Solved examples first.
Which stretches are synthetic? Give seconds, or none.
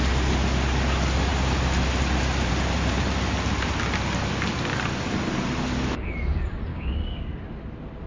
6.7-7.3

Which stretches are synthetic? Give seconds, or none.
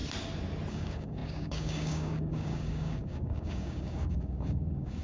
0.7-5.0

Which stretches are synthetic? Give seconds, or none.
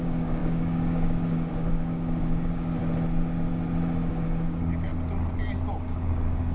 0.0-2.8; 4.1-4.9; 5.7-6.5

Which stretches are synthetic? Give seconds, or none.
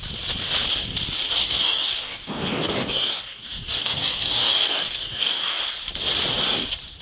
1.4-5.6